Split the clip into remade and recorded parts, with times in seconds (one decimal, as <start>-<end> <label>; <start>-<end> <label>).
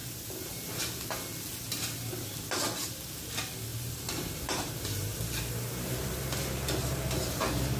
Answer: 0.0-0.5 remade; 0.5-3.7 recorded; 3.7-7.8 remade